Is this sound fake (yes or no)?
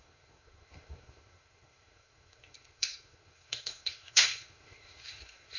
yes